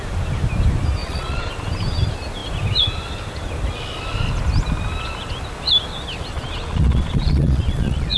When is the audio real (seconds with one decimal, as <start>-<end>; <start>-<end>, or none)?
0.0-1.0; 1.5-6.3